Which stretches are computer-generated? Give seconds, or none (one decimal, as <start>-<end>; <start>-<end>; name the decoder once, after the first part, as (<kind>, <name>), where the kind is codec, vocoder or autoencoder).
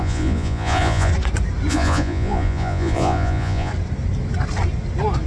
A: 0.0-1.1 (vocoder, Vocos); 1.7-3.7